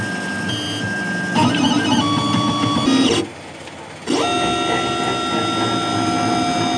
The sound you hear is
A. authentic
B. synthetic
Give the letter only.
A